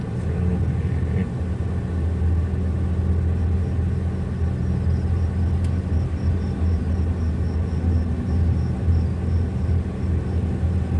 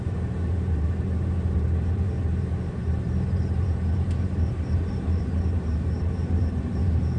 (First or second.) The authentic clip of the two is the first